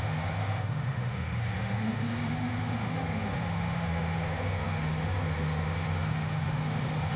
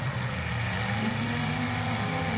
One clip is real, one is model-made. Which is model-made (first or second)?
first